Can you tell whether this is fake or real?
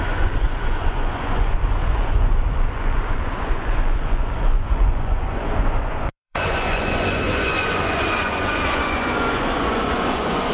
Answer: fake